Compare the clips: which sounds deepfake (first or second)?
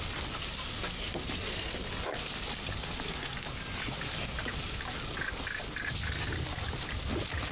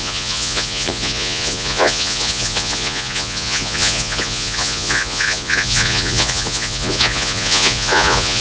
second